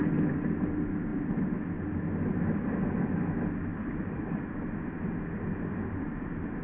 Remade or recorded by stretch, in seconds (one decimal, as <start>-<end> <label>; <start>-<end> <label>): 0.0-3.7 recorded; 3.7-6.6 remade